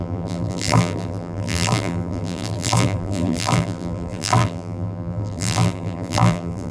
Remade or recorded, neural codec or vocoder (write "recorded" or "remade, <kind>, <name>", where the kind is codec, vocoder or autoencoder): remade, vocoder, BigVGAN v2